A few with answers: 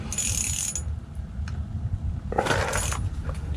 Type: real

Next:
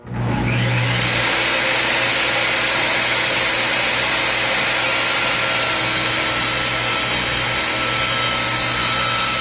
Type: real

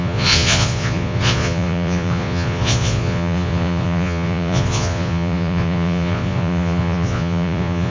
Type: fake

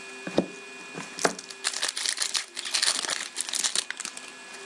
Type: real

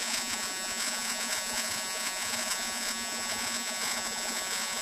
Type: fake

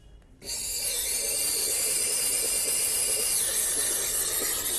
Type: real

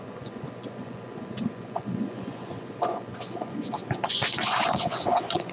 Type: fake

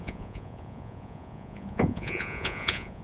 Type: fake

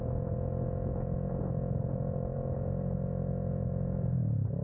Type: fake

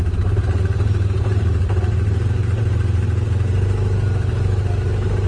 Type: real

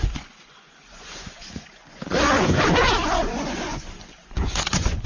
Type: fake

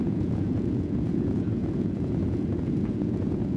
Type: fake